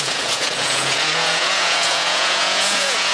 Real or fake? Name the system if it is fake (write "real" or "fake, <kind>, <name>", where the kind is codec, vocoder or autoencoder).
fake, vocoder, Vocos